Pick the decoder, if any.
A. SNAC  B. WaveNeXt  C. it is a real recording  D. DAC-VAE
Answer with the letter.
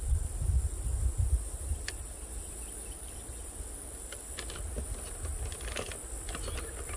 C